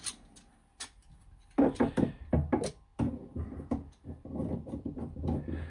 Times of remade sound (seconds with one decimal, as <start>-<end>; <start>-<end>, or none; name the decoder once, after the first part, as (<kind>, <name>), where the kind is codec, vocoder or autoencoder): 1.0-2.3 (vocoder, BigVGAN v2); 2.9-5.2